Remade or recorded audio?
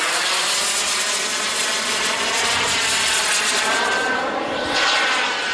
recorded